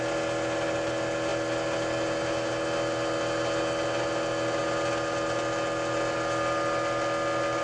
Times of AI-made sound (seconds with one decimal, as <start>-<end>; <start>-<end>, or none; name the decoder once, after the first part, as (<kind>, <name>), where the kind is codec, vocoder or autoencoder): none